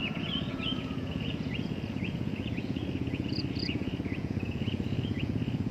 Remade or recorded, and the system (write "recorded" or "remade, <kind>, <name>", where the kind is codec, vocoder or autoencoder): remade, vocoder, Vocos